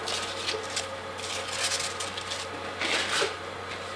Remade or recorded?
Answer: recorded